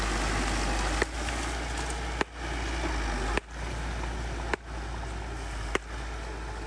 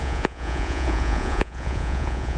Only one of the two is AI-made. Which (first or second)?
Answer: second